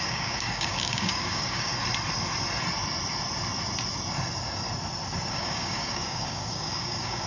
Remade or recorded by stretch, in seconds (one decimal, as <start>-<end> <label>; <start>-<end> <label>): 0.0-1.7 remade; 1.7-5.3 recorded; 5.3-7.3 remade